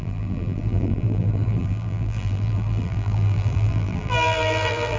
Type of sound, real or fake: fake